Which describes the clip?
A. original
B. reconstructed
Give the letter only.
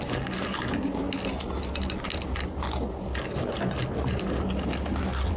A